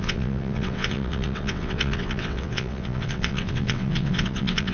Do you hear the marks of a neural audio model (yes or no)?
yes